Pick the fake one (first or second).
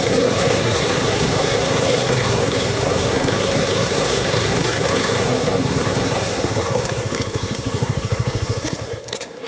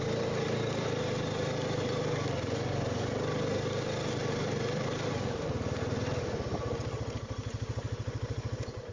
first